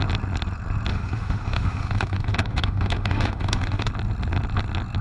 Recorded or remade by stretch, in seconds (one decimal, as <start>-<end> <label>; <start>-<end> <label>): 0.0-0.9 recorded; 0.9-3.9 remade; 3.9-5.0 recorded